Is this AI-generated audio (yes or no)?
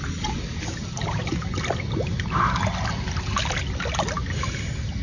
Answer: no